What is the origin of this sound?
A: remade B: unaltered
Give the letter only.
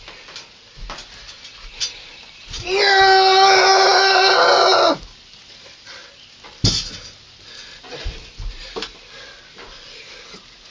B